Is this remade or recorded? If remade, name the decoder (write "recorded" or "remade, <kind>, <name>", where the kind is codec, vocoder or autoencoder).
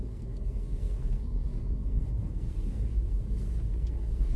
remade, codec, SNAC